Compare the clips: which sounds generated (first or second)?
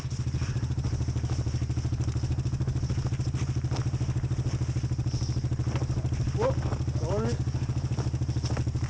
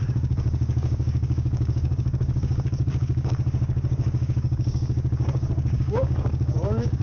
second